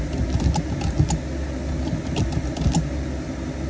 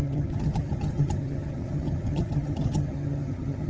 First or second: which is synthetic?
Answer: second